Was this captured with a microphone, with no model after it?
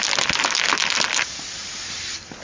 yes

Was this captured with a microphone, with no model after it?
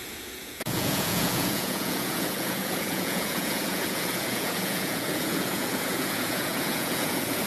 no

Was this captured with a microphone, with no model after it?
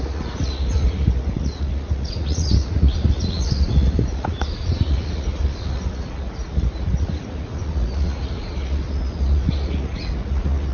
no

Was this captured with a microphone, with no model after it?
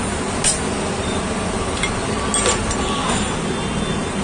yes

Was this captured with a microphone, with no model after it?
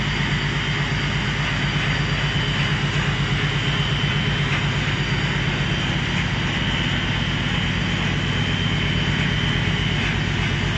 yes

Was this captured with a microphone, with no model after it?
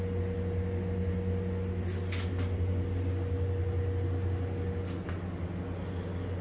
yes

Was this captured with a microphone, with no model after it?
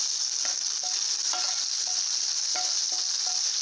yes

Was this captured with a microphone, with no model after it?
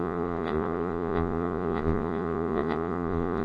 no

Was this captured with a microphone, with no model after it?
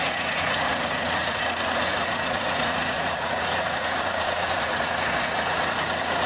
no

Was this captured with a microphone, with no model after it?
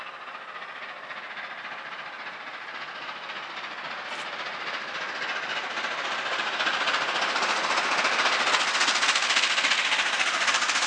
yes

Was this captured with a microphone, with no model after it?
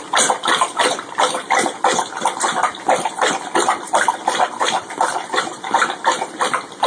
yes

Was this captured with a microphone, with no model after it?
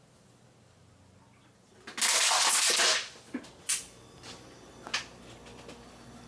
yes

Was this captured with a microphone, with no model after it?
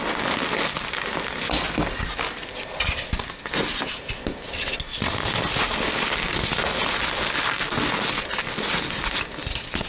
yes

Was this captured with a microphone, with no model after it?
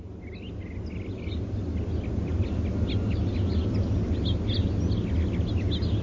yes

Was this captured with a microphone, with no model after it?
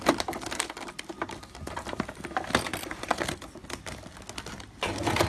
yes